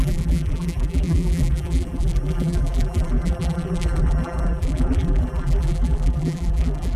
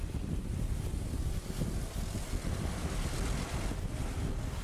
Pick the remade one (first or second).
first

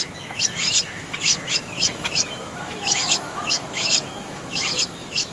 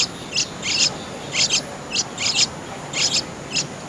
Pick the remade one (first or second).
first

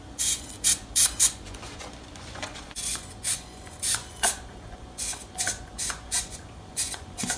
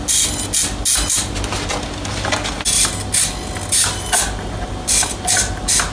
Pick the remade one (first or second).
first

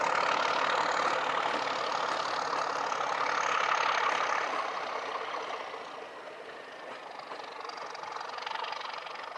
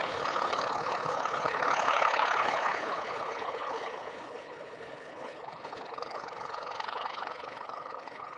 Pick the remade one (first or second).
second